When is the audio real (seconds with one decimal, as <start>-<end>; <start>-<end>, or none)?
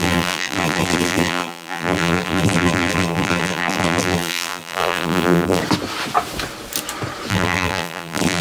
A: 5.6-7.3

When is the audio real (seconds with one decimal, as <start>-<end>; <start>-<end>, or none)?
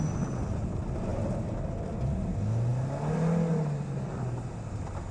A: 0.0-5.1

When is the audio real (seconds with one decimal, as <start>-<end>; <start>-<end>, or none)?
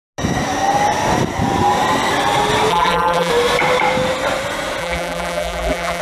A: 0.0-2.7; 3.3-4.8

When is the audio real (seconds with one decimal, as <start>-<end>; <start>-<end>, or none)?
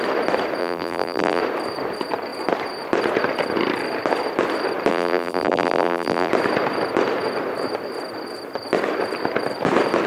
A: 0.0-0.6; 1.4-4.9; 6.3-10.1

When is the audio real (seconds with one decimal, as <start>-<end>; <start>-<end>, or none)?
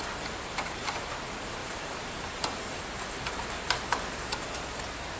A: none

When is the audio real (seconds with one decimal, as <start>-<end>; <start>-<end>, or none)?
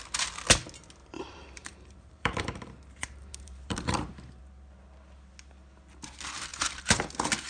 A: 0.0-1.0; 4.4-6.5; 7.1-7.5